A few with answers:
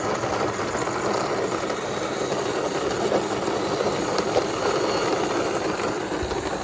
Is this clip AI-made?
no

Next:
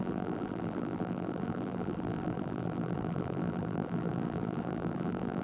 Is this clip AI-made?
yes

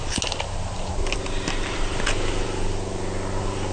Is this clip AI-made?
no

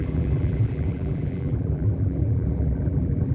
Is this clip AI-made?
yes